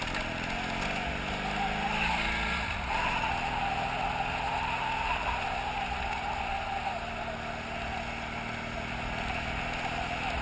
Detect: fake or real real